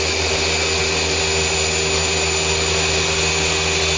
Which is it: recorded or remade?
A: recorded